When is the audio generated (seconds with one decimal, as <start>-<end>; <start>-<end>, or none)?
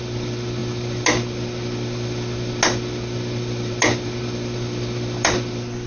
none